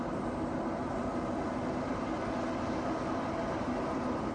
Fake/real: real